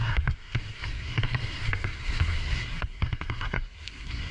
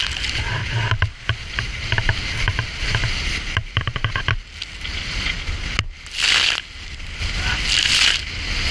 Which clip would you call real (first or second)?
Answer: second